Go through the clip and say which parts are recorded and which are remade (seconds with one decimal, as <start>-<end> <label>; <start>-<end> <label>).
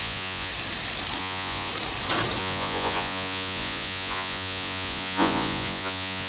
0.0-0.5 remade; 0.5-1.2 recorded; 1.2-1.7 remade; 1.7-2.4 recorded; 2.4-6.3 remade